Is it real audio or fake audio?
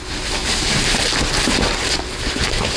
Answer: real